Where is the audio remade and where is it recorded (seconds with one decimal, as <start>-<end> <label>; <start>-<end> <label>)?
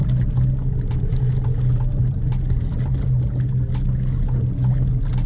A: 0.0-5.3 recorded